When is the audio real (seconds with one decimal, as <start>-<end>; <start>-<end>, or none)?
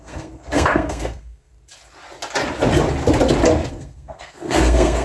1.5-3.7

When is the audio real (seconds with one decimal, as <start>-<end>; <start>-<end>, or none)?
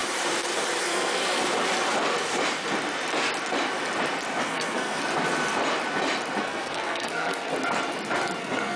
0.0-0.8; 1.4-4.4; 5.0-6.4; 7.5-8.4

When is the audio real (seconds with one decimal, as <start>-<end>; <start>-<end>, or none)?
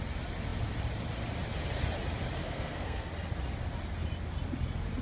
0.0-2.4; 3.1-5.0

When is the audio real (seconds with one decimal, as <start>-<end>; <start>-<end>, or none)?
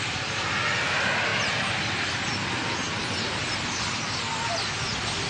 0.0-5.3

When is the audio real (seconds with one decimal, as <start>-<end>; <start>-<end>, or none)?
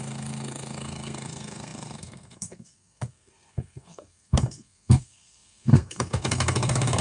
none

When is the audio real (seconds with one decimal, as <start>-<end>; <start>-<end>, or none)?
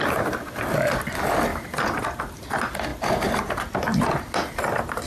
0.0-2.9; 3.5-5.1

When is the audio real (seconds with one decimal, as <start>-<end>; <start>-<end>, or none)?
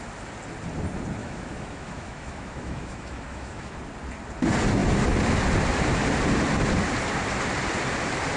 0.0-1.2; 3.8-8.4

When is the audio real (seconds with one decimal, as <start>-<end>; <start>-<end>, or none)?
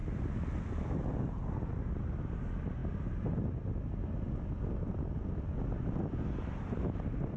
0.0-7.4